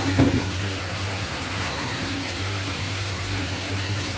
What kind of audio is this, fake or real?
fake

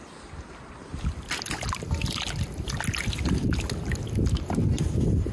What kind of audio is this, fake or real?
real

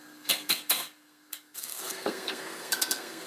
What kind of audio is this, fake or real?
fake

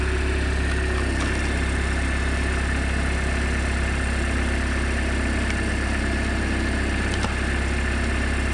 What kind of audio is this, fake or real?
real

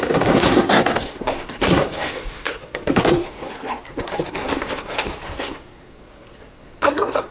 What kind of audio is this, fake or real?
fake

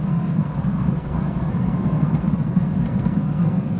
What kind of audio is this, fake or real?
fake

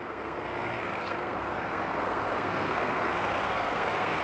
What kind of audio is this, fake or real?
fake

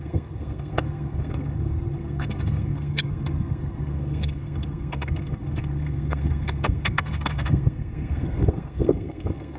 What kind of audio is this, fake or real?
fake